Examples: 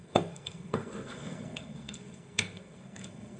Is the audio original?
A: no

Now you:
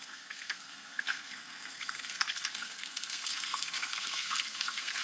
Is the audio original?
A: no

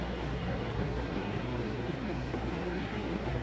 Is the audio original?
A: no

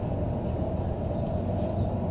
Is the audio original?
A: yes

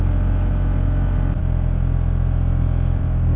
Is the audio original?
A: yes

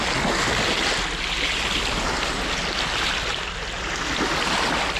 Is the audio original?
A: yes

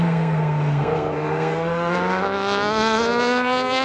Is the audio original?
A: no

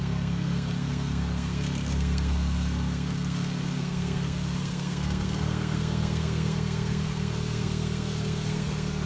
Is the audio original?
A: no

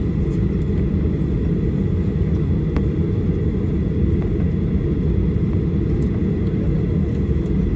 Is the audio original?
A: yes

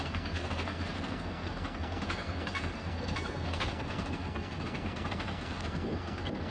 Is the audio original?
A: no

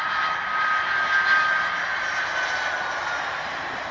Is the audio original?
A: yes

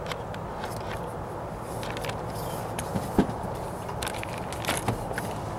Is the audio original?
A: yes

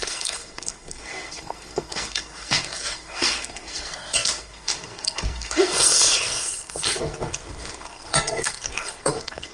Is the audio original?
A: no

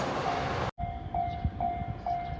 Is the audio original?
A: yes